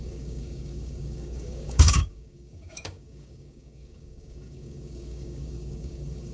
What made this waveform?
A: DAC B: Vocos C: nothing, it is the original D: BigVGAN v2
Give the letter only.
A